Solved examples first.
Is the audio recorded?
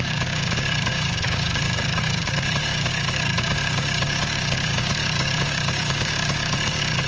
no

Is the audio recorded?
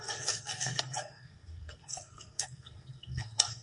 no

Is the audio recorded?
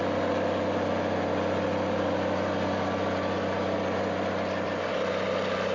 yes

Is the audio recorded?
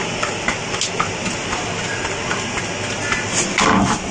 yes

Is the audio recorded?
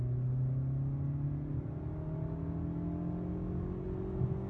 yes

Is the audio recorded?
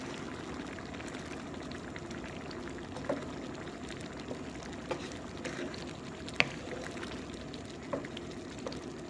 yes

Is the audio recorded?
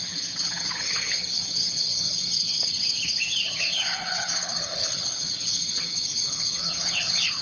no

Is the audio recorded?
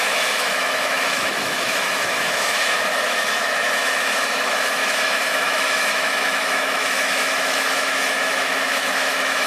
no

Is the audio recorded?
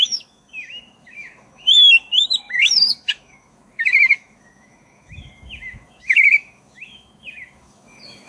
no